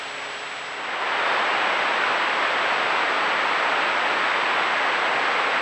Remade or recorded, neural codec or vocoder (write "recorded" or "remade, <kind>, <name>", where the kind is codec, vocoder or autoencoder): recorded